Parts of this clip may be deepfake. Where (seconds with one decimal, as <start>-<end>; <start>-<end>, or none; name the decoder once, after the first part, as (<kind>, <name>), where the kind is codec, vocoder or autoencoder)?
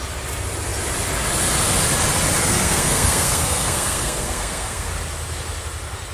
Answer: 2.4-4.9 (codec, SNAC)